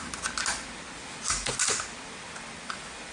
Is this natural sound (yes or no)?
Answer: yes